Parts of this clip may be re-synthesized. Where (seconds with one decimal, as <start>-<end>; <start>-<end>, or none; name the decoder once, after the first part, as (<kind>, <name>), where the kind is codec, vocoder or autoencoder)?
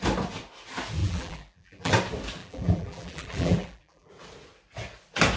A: 1.0-1.9 (vocoder, BigVGAN v2); 2.4-4.1